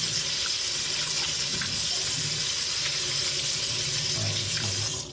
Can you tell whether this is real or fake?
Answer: real